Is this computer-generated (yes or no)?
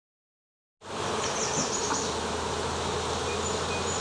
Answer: no